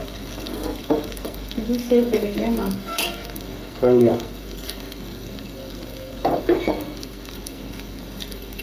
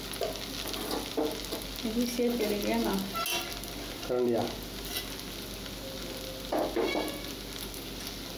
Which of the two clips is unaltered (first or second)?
second